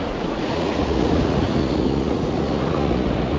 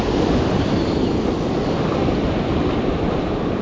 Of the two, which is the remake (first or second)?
first